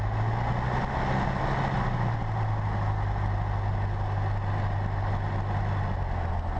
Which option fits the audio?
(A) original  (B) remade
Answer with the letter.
A